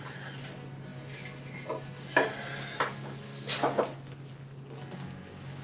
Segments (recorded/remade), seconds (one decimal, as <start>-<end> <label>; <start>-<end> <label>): 0.0-5.6 recorded